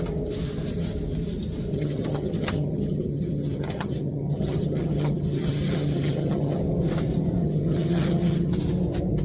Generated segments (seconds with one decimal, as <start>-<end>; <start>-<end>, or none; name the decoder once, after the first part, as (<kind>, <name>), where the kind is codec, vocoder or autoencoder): 1.7-6.6 (vocoder, HiFi-GAN); 7.4-8.5